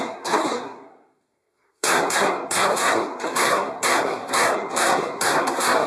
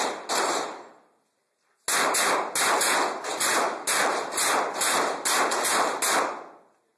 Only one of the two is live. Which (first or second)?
second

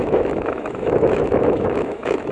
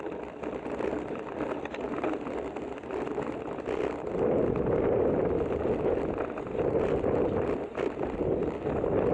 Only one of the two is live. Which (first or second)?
second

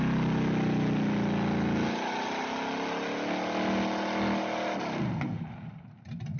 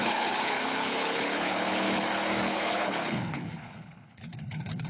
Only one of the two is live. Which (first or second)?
first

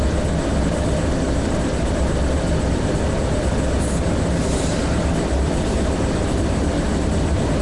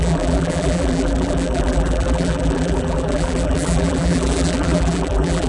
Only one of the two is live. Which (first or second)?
first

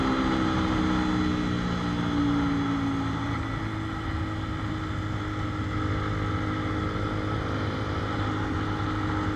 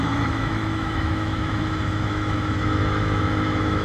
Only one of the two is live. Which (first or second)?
first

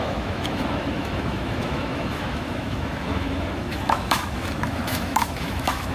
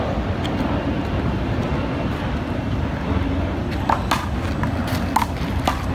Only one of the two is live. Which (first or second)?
second